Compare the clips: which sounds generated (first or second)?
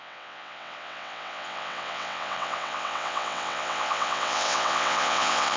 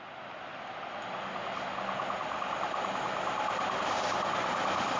first